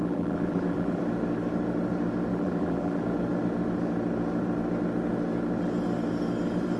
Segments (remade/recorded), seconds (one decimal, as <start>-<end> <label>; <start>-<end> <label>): 0.0-1.0 remade; 1.0-2.3 recorded; 2.3-3.0 remade; 3.0-6.8 recorded